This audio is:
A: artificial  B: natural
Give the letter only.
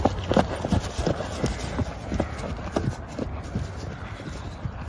B